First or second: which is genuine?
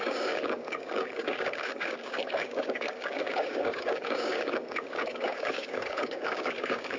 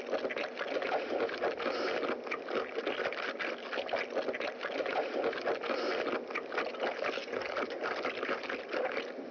second